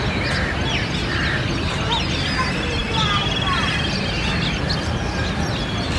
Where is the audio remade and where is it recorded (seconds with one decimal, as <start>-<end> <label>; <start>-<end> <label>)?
0.0-6.0 recorded